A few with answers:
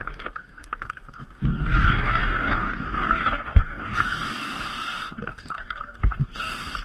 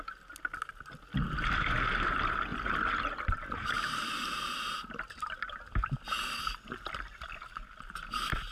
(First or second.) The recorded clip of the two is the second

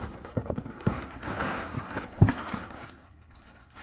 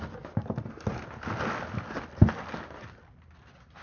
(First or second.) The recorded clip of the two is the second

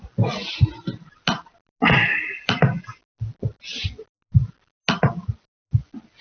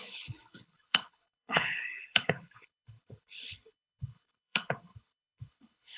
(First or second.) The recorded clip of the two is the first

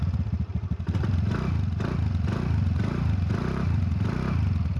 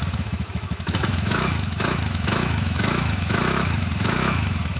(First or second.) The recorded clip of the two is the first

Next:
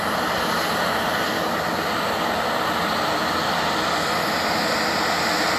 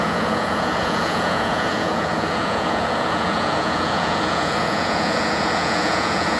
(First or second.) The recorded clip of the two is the first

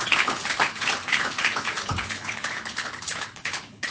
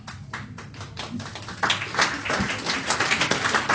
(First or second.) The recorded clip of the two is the second